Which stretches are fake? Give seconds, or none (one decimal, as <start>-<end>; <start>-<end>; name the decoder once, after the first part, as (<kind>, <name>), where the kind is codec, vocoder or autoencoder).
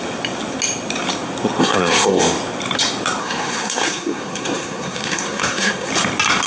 1.6-2.2 (codec, SNAC); 3.2-5.9